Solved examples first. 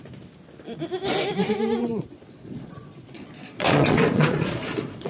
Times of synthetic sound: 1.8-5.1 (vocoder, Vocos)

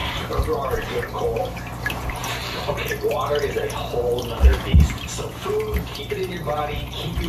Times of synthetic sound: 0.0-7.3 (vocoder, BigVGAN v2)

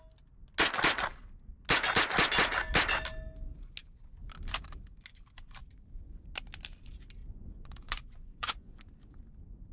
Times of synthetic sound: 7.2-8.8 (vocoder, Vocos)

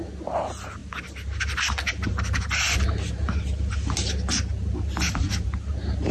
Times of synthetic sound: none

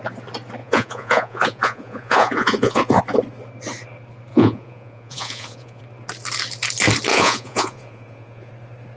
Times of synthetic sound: 0.6-3.0 (vocoder, Vocos); 4.3-5.8; 7.1-8.5

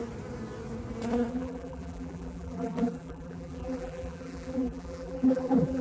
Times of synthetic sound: 1.3-5.8 (vocoder, BigVGAN v2)